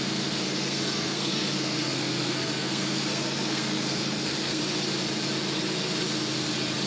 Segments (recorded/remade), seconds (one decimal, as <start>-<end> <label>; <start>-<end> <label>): 0.0-4.6 remade; 4.6-6.9 recorded